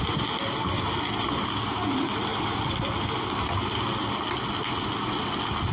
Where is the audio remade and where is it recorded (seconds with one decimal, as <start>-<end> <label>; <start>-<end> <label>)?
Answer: 0.0-5.7 recorded